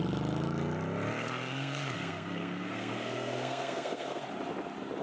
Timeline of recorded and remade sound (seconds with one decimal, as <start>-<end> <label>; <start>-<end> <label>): 0.0-1.2 recorded; 1.2-4.2 remade; 4.2-5.0 recorded